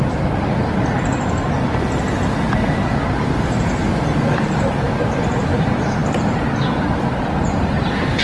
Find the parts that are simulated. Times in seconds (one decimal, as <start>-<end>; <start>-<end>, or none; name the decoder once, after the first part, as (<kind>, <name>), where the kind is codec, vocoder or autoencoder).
0.0-8.2 (vocoder, BigVGAN v2)